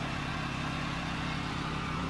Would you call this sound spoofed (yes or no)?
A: yes